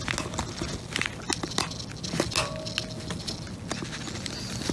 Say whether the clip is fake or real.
real